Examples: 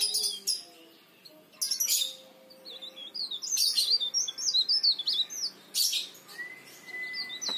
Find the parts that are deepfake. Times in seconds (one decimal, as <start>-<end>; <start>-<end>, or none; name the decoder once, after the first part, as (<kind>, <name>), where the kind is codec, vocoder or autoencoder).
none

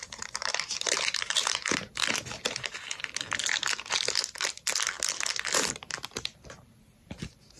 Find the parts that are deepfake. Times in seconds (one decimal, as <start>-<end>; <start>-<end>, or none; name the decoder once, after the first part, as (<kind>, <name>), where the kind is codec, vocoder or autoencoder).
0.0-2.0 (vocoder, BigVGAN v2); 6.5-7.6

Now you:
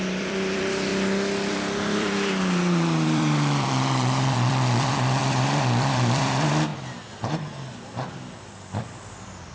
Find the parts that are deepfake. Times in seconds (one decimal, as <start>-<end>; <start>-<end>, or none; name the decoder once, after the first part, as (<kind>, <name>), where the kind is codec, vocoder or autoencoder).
0.0-0.9 (vocoder, BigVGAN v2); 1.5-6.7; 8.8-9.5

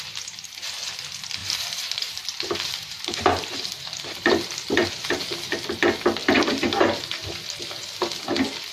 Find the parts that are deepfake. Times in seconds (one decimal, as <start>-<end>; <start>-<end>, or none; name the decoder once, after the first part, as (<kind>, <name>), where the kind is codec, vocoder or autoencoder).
1.4-5.2 (vocoder, BigVGAN v2); 6.2-7.3

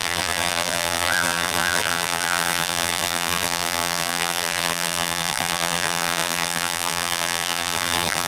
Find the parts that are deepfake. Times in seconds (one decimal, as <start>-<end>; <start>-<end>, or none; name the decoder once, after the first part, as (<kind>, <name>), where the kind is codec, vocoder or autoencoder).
0.0-8.3 (vocoder, BigVGAN v2)

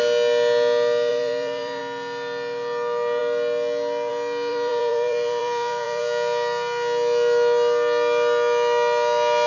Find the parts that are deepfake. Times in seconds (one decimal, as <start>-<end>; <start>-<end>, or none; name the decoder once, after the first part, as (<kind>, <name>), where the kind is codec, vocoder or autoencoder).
1.1-1.8 (vocoder, BigVGAN v2); 4.5-6.0